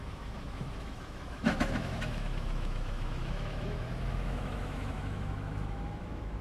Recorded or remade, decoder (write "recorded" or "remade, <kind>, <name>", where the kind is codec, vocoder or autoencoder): remade, autoencoder, DAC-VAE